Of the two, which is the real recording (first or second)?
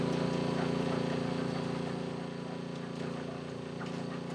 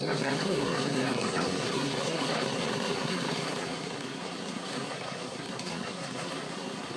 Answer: first